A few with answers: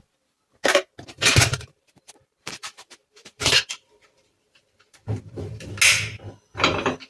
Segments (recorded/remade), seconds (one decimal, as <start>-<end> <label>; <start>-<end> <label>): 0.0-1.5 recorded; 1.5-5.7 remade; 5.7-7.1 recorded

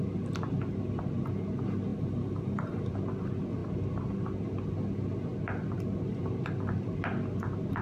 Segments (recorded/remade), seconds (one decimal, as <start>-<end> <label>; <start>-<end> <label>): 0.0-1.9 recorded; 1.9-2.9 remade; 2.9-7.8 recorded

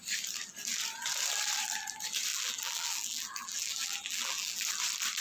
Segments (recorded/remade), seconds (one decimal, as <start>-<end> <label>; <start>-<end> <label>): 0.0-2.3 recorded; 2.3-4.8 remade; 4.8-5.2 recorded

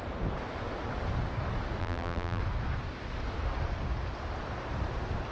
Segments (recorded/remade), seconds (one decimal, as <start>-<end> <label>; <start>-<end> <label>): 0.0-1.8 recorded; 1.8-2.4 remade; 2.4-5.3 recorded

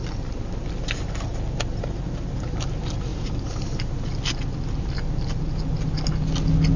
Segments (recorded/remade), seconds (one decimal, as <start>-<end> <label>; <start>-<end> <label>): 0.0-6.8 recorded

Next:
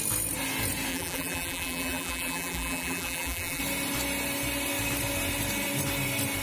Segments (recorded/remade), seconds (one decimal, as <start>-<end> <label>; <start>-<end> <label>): 0.0-0.9 recorded; 0.9-3.6 remade; 3.6-6.4 recorded

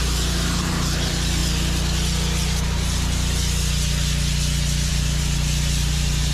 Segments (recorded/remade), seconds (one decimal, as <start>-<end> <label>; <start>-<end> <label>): 0.0-1.4 remade; 1.4-4.9 recorded; 4.9-6.3 remade

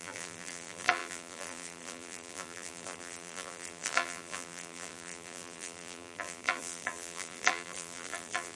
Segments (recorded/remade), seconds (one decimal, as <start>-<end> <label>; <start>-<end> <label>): 0.0-8.6 remade